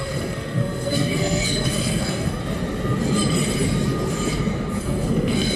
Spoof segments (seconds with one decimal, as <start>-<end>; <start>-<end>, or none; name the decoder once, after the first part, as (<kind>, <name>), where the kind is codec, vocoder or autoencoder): 0.0-2.4 (codec, SNAC); 4.8-5.6